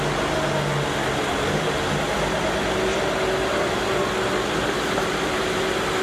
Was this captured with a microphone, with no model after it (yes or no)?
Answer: yes